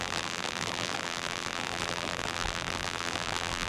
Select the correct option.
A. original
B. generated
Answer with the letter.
B